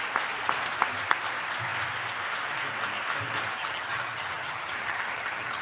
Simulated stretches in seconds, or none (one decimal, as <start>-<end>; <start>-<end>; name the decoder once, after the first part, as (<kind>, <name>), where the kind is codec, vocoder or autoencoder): 3.6-5.6 (vocoder, HiFi-GAN)